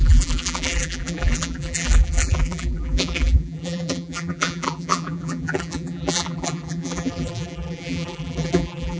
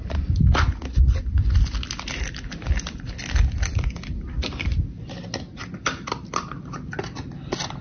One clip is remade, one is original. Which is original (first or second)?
second